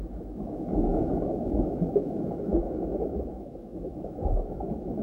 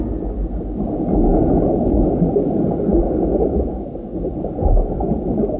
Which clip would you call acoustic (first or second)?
second